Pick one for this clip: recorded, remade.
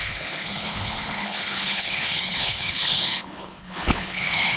remade